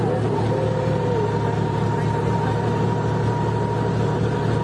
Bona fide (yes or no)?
yes